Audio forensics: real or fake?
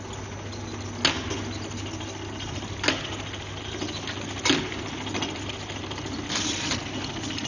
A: real